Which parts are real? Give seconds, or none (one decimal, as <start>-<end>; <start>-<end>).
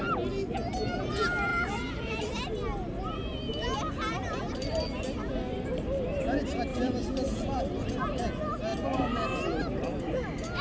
0.0-1.5; 2.3-6.7; 7.6-10.6